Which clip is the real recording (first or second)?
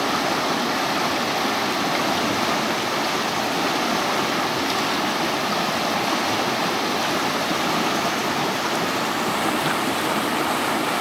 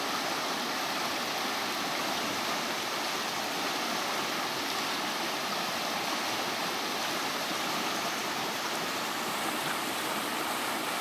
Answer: first